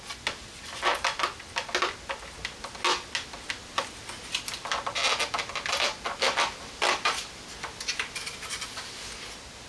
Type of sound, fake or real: real